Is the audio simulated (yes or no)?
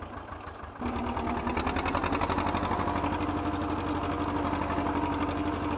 no